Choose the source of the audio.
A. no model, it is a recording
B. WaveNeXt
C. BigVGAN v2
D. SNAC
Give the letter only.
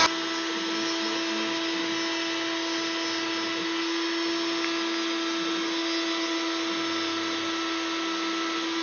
A